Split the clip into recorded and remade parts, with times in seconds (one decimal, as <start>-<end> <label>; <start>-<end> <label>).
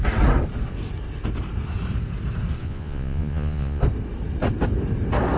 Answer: 0.0-2.6 recorded; 2.6-3.8 remade; 3.8-5.4 recorded